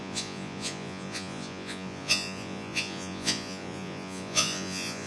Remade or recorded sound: remade